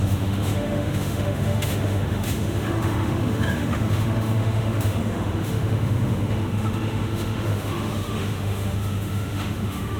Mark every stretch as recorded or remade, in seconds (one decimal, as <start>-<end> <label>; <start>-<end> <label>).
0.0-10.0 remade